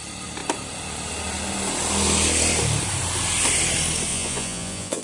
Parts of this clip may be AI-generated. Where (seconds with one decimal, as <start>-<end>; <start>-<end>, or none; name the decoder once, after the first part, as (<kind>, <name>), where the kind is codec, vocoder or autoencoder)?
4.1-5.0 (vocoder, Vocos)